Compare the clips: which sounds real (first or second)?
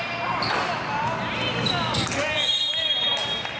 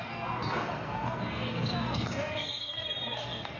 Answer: first